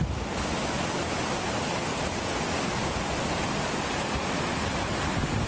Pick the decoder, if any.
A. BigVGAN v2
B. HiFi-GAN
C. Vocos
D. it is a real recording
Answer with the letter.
D